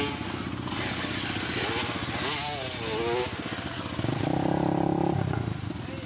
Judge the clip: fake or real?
real